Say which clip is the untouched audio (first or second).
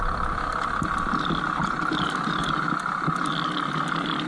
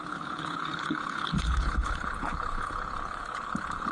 first